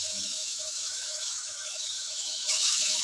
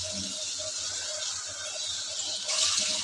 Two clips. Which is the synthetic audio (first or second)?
first